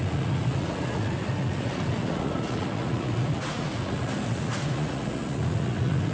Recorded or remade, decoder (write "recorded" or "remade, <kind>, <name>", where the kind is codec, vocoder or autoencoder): remade, vocoder, Vocos